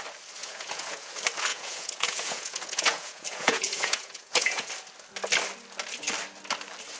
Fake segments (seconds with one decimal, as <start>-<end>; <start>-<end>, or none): 0.4-1.1; 1.5-4.7